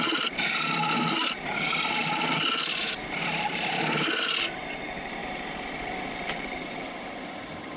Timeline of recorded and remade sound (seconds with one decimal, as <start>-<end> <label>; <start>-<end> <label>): 0.0-2.0 recorded; 2.0-3.8 remade; 3.8-5.2 recorded; 5.2-7.8 remade

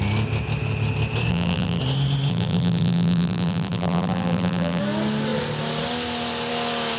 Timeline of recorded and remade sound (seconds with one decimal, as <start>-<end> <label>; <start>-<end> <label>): 0.0-1.3 recorded; 1.3-1.8 remade; 1.8-2.3 recorded; 2.3-4.8 remade; 4.8-7.0 recorded

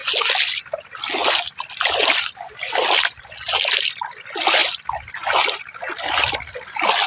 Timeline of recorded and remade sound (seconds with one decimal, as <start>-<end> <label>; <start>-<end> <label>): 0.0-4.6 recorded; 4.6-5.2 remade; 5.2-7.1 recorded

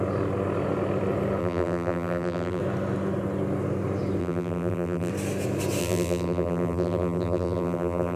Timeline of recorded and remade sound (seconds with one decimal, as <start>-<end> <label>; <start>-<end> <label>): 0.0-1.4 recorded; 1.4-2.6 remade; 2.6-4.2 recorded; 4.2-5.1 remade; 5.1-5.8 recorded; 5.8-8.2 remade

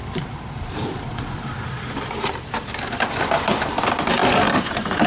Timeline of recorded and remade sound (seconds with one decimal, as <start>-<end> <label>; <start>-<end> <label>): 0.0-3.1 remade; 3.1-4.2 recorded; 4.2-5.1 remade